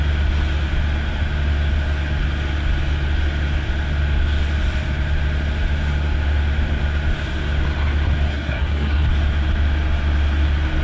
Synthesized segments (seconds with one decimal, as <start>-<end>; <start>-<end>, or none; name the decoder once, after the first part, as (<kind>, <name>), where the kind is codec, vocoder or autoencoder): 8.3-9.1 (codec, SNAC)